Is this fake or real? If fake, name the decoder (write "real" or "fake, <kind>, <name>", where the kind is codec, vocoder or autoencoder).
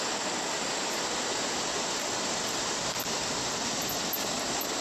real